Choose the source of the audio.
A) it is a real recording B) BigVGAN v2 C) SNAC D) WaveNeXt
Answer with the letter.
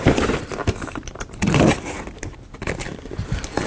B